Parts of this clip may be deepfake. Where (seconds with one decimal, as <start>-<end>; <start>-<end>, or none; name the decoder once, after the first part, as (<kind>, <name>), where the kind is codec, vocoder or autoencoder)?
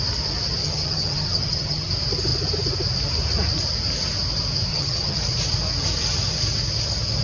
0.6-1.9 (vocoder, HiFi-GAN); 4.7-5.2